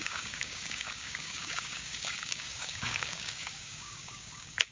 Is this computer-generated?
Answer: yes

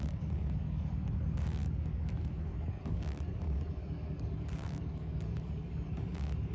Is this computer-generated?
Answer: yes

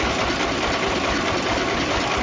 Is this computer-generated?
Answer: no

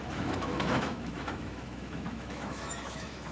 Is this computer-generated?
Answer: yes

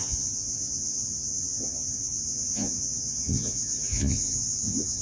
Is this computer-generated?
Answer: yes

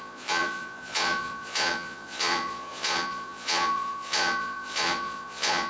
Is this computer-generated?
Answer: yes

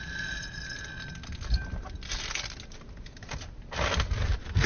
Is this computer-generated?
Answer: no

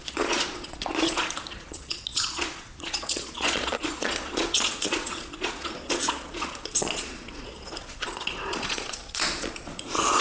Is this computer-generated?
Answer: yes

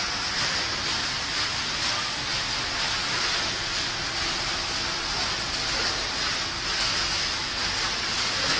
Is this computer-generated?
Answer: no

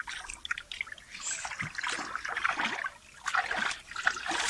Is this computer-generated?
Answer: no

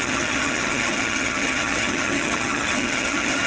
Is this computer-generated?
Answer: yes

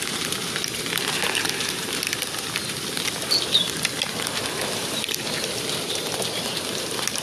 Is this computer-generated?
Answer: no